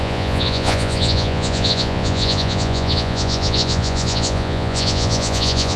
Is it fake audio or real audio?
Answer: fake